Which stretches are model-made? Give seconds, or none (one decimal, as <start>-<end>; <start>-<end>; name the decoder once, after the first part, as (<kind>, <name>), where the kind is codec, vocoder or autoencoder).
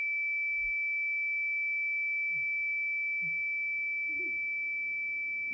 none